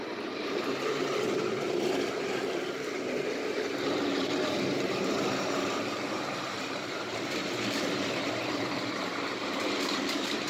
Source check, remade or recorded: remade